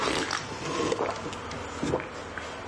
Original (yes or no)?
yes